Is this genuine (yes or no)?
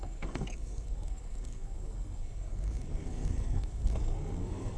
no